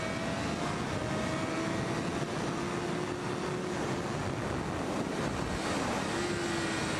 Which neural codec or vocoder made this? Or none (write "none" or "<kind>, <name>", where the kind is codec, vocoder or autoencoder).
none